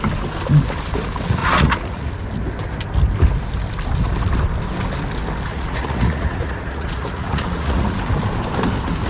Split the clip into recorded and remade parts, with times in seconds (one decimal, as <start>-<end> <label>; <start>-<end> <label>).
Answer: 0.0-1.4 recorded; 1.4-2.1 remade; 2.1-5.5 recorded; 5.5-8.0 remade; 8.0-9.1 recorded